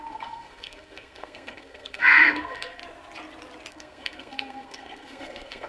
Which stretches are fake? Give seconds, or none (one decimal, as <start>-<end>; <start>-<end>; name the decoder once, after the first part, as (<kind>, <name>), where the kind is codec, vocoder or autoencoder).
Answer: 0.0-2.8 (codec, SNAC); 3.7-5.7